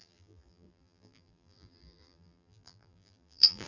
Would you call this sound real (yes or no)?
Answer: no